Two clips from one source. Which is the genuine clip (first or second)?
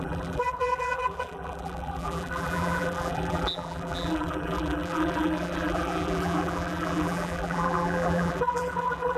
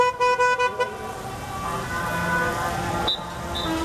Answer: second